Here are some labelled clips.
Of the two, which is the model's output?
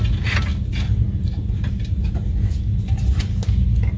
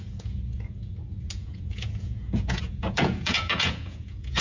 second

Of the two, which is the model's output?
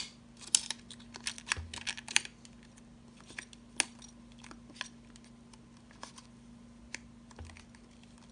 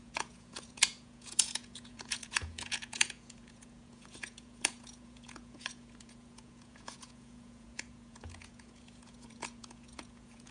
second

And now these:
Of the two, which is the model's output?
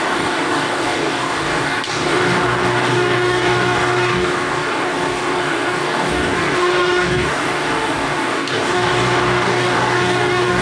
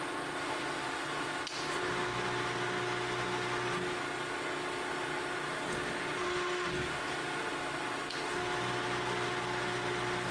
first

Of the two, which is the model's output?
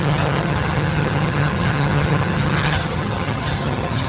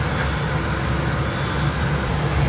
first